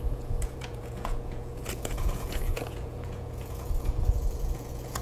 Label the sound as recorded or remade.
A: remade